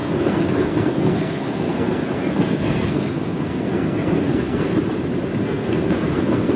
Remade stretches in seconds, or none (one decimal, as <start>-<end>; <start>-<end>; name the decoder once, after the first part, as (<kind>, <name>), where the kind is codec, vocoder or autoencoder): 0.0-4.7 (codec, SNAC); 5.4-6.6